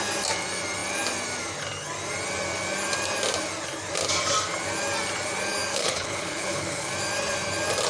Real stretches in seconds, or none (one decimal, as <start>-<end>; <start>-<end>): 0.0-5.7; 6.9-7.9

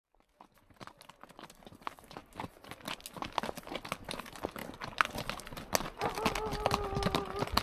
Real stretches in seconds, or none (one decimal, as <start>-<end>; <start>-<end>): 0.0-7.6

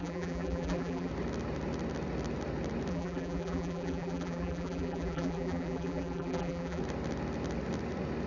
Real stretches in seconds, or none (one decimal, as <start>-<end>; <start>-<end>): 1.1-2.9; 6.8-8.3

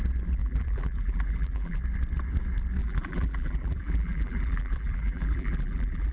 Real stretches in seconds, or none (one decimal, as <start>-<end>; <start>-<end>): 0.0-0.4; 1.8-2.8

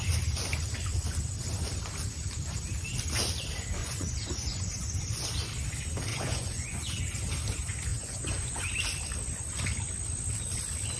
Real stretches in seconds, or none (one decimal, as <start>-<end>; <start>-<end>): 0.0-3.8; 4.8-6.1; 7.0-7.9; 8.7-11.0

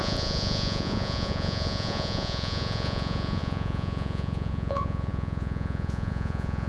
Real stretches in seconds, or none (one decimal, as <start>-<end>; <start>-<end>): none

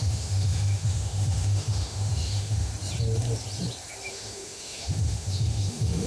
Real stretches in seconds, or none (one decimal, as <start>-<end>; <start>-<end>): 2.7-4.1

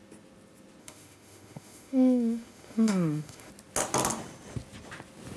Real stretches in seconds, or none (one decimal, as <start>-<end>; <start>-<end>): 0.0-0.8; 3.5-5.4